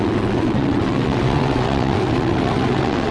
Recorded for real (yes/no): no